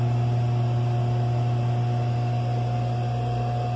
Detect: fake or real real